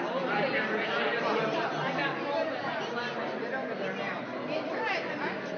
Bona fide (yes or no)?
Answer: yes